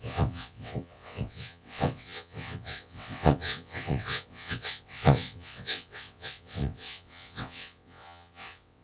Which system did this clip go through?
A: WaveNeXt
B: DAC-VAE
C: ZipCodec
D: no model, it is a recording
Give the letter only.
A